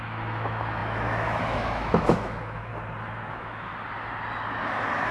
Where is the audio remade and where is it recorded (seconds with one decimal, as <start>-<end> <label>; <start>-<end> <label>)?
0.0-2.7 remade; 2.7-3.3 recorded; 3.3-3.7 remade; 3.7-4.6 recorded; 4.6-5.1 remade